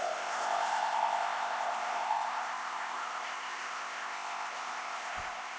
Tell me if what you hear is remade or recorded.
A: remade